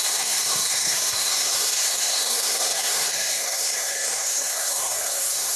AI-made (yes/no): yes